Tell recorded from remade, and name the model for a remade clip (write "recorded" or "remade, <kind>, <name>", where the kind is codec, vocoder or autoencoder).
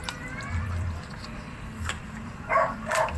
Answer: remade, vocoder, BigVGAN v2